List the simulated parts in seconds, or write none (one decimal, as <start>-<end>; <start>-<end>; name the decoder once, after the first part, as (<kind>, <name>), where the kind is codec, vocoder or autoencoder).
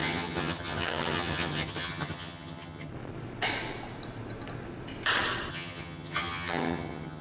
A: 0.0-2.9 (vocoder, HiFi-GAN); 5.5-7.2